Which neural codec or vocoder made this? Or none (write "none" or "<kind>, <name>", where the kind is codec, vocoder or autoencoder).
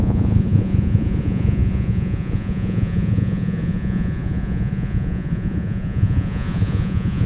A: vocoder, Vocos